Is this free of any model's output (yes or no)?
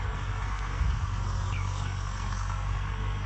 no